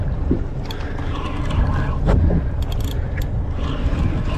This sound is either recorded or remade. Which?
recorded